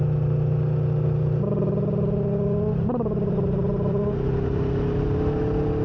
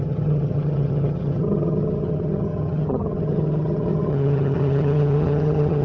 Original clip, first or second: first